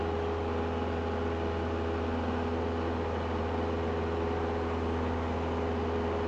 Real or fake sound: real